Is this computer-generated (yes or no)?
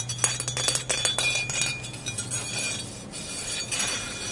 no